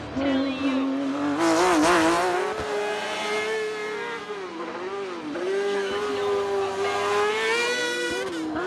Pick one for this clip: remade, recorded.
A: recorded